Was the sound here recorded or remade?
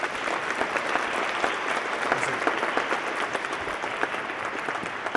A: recorded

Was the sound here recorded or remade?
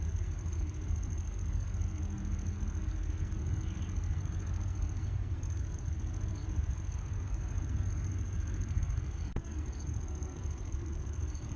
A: remade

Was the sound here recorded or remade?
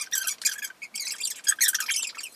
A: recorded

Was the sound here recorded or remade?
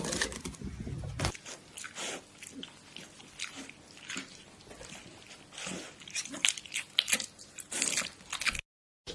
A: recorded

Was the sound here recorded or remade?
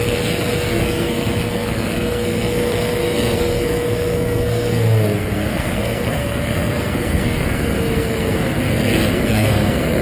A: remade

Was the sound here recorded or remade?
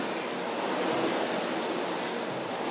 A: recorded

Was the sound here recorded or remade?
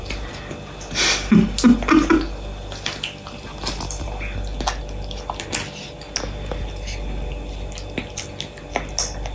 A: recorded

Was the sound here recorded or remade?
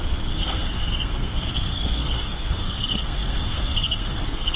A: remade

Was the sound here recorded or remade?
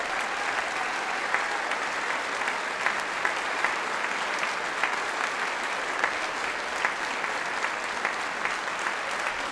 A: recorded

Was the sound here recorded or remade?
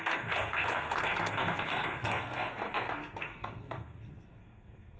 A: remade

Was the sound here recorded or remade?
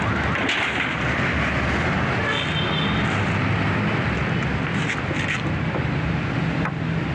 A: recorded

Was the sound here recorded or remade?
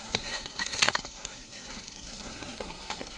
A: remade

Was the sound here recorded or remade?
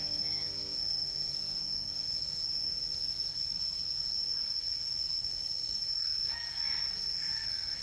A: remade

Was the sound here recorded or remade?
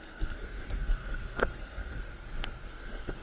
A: remade